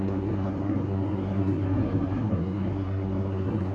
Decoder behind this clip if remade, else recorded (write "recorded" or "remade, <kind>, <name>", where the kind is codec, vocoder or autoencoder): remade, codec, SNAC